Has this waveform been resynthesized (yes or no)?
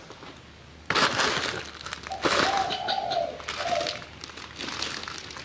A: no